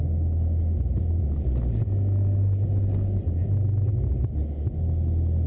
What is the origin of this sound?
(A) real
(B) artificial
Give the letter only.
A